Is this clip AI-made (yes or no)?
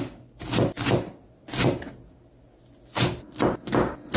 no